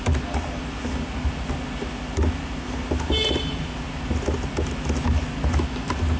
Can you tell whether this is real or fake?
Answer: real